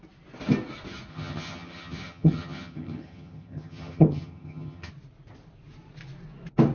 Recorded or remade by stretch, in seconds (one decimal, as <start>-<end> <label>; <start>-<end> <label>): 0.0-1.1 recorded; 1.1-4.9 remade; 4.9-6.7 recorded